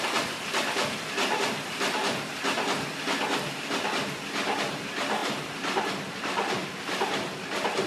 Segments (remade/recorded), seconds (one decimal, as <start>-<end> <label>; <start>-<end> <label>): 0.0-7.9 recorded